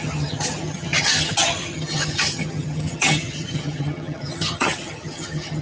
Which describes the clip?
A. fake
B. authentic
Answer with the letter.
A